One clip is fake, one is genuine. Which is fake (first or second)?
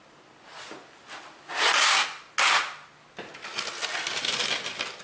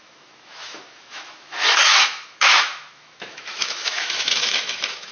second